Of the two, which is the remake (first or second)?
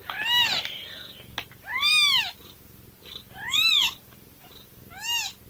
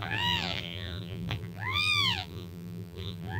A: second